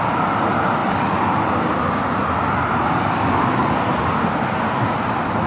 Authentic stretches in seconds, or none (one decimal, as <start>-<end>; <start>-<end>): 0.0-5.5